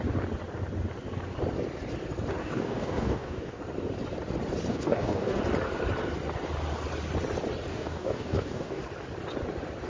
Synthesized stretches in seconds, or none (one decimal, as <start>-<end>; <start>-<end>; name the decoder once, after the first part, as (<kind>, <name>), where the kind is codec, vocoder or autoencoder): 2.4-3.6 (codec, DAC); 4.7-5.4; 7.7-8.8